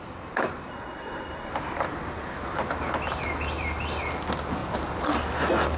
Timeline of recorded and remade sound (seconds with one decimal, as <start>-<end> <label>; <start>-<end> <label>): 0.0-0.7 recorded; 0.7-1.5 remade; 1.5-5.8 recorded